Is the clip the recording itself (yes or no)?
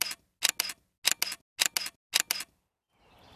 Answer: yes